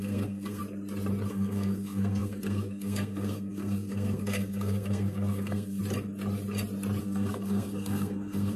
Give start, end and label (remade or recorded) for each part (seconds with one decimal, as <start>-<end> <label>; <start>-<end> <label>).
0.0-0.6 remade; 0.6-1.3 recorded; 1.3-5.8 remade; 5.8-7.0 recorded; 7.0-8.6 remade